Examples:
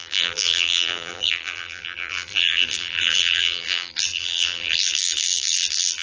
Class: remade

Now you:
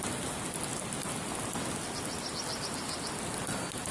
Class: recorded